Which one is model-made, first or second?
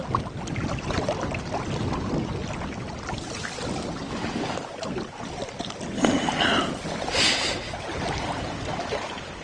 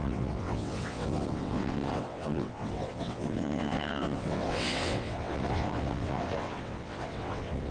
second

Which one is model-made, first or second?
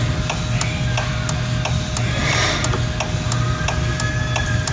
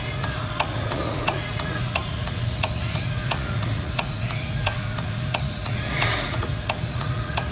second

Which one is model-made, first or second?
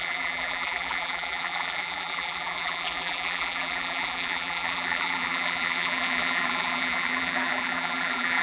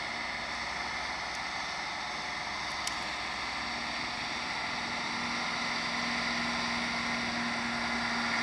first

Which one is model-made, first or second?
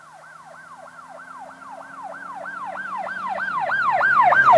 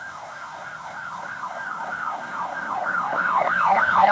second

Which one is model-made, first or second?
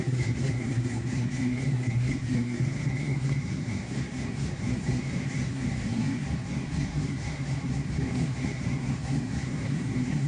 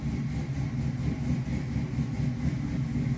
first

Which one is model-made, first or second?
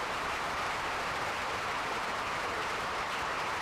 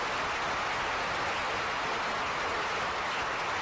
first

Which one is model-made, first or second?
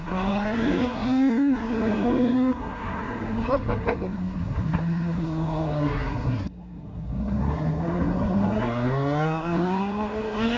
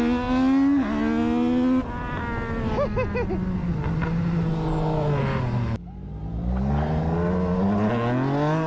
first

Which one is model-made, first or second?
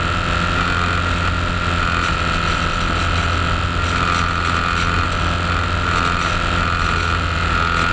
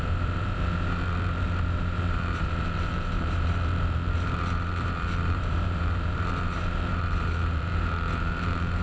second